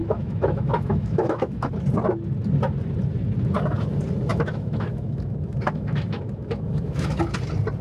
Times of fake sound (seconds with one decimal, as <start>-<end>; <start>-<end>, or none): 0.0-1.7; 4.3-7.2